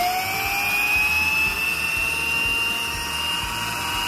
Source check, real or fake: real